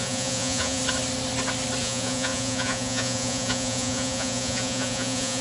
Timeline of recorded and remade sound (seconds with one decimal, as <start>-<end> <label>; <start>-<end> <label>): 0.0-0.8 remade; 0.8-1.8 recorded; 1.8-5.4 remade